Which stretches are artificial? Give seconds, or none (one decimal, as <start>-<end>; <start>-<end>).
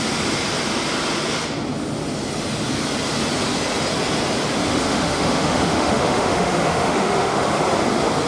4.7-7.6